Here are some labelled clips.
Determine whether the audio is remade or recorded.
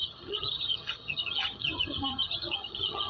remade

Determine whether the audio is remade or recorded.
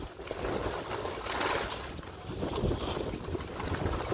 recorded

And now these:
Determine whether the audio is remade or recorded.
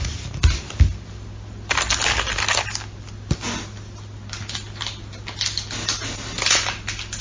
recorded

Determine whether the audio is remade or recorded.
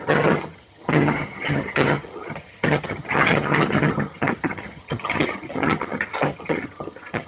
remade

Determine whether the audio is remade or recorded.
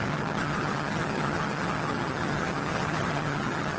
remade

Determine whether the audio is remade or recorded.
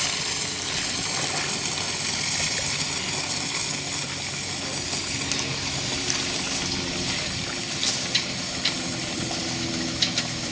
recorded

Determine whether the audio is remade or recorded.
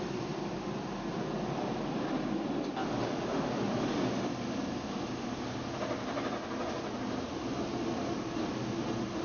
recorded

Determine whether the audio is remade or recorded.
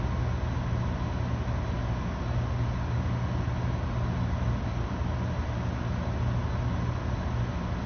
recorded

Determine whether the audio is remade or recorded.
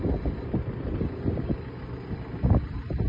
recorded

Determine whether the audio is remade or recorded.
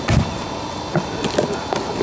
recorded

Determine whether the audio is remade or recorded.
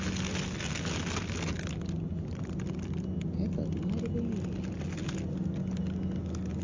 recorded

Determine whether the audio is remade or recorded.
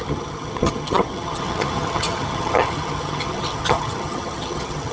remade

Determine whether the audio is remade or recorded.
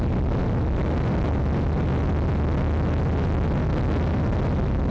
recorded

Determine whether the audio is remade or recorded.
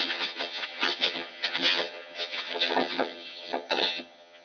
remade